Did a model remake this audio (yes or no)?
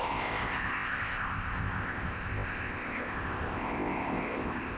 yes